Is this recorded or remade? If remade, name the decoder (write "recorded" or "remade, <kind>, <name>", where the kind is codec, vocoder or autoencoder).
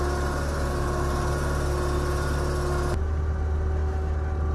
recorded